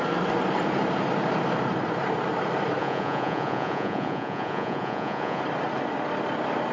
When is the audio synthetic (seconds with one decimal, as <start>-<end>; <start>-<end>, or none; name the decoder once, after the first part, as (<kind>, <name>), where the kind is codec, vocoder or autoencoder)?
2.8-5.4 (vocoder, Vocos)